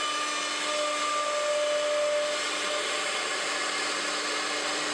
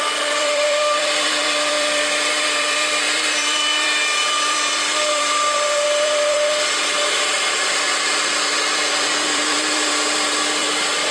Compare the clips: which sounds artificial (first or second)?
second